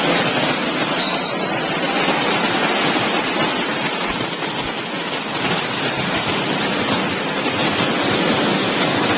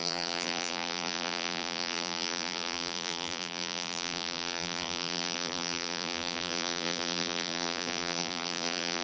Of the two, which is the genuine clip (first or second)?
first